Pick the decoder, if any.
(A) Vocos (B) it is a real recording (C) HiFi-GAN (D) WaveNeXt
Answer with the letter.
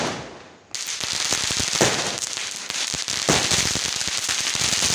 B